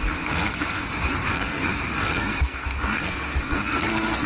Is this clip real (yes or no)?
no